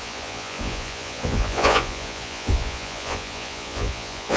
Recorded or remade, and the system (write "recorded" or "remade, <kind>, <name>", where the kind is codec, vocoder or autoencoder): remade, vocoder, Vocos